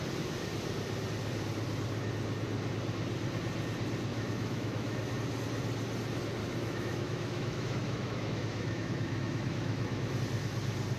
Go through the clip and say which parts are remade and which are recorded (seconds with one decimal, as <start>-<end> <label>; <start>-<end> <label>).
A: 0.0-4.1 recorded; 4.1-5.1 remade; 5.1-6.4 recorded; 6.4-10.2 remade; 10.2-11.0 recorded